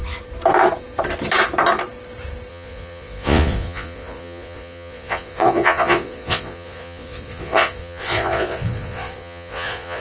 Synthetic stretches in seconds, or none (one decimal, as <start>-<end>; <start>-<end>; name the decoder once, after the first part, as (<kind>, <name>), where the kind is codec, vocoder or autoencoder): 2.5-10.0 (vocoder, Vocos)